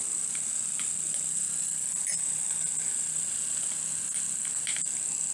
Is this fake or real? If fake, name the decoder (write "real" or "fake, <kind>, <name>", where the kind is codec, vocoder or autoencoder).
real